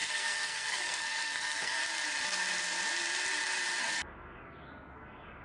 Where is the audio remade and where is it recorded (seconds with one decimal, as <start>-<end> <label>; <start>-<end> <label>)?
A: 0.0-1.8 remade; 1.8-3.8 recorded; 3.8-5.4 remade